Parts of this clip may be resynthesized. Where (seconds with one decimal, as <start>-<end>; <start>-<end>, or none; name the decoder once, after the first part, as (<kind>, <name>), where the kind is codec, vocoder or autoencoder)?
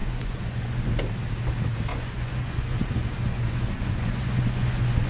0.0-0.9 (vocoder, Vocos); 1.9-5.1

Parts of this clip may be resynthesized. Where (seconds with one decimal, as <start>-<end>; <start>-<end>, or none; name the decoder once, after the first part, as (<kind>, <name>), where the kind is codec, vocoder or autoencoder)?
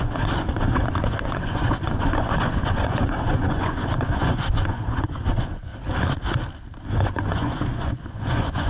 0.0-5.7 (vocoder, Vocos); 6.9-8.7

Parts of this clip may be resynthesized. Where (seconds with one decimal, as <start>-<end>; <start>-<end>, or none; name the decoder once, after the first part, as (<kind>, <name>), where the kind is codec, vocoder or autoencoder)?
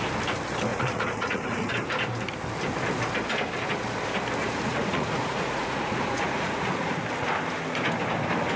0.7-1.7 (vocoder, Vocos); 4.4-7.0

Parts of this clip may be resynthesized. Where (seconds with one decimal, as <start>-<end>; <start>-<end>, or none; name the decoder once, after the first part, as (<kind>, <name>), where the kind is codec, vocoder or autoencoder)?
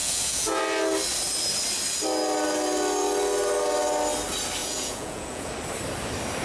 0.0-0.6 (vocoder, Vocos); 4.6-5.5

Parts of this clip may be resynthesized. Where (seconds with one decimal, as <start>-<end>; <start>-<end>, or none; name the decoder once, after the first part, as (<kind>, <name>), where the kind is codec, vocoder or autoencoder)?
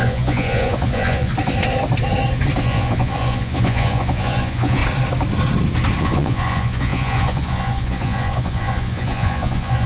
0.0-1.3 (vocoder, Vocos); 2.6-4.8; 6.0-9.9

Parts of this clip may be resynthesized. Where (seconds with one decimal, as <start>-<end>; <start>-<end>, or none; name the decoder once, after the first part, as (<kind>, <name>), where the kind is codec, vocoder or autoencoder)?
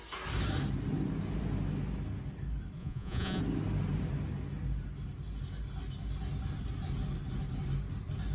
2.8-3.4 (vocoder, Vocos)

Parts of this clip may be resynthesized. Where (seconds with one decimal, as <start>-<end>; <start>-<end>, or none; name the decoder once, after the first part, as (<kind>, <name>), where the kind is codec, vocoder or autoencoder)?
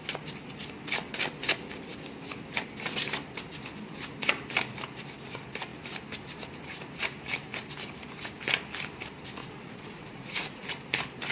9.4-10.7 (vocoder, Vocos)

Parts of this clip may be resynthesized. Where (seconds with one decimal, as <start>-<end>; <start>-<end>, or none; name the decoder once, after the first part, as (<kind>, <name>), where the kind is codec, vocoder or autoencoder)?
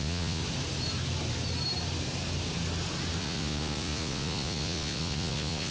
0.0-0.4 (vocoder, Vocos); 3.2-5.7